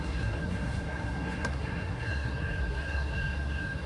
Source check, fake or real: fake